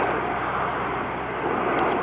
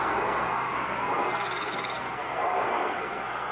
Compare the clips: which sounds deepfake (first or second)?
second